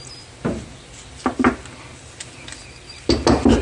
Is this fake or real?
real